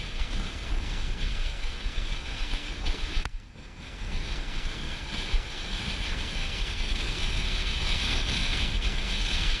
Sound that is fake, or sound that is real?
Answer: fake